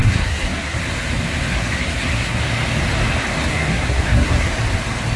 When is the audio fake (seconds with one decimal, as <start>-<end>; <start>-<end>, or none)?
0.0-0.8; 1.5-2.4; 3.5-4.5